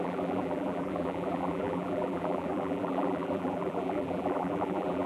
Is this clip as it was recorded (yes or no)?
no